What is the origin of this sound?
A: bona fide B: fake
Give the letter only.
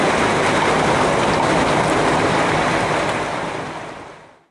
A